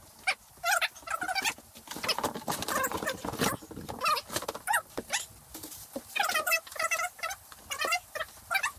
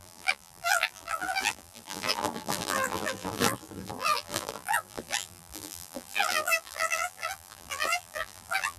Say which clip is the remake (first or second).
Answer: second